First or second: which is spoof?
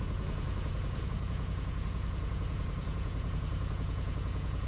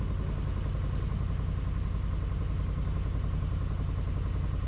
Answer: first